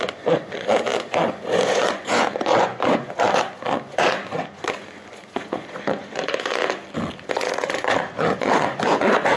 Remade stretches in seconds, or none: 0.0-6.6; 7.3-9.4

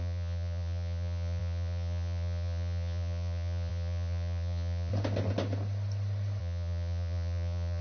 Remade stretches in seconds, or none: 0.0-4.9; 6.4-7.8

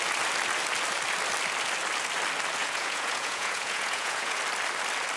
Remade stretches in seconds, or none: 2.6-4.4

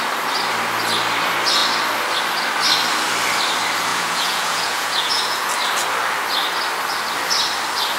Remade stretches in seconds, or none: 3.9-5.5